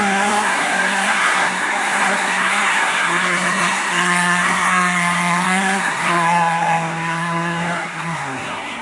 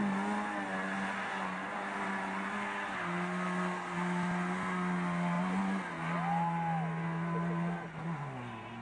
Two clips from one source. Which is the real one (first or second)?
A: second